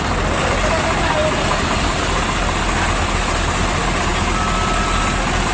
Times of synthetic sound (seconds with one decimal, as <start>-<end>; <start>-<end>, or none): 1.2-1.9